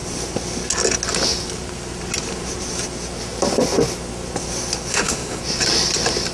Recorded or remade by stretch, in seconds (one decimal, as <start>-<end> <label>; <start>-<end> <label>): 0.0-4.9 recorded; 4.9-5.4 remade; 5.4-6.3 recorded